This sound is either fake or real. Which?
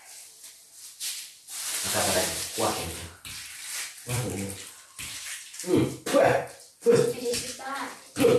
fake